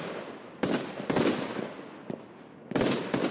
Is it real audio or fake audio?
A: real